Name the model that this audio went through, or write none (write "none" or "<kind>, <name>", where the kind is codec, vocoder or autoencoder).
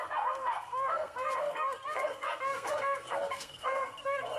codec, SNAC